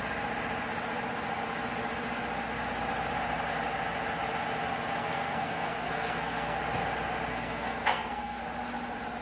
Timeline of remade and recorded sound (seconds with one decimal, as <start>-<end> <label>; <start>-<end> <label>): 0.0-5.0 recorded; 5.0-6.6 remade; 6.6-7.3 recorded; 7.3-8.4 remade; 8.4-9.2 recorded